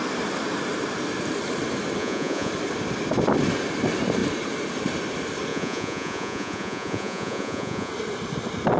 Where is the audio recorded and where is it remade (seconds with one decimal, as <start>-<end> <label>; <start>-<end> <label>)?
0.0-2.0 recorded; 2.0-2.5 remade; 2.5-5.5 recorded; 5.5-7.9 remade; 7.9-8.8 recorded